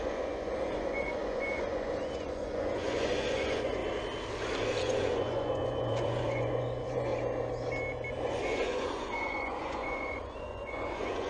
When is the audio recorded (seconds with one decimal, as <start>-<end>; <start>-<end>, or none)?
3.8-4.8; 7.1-8.3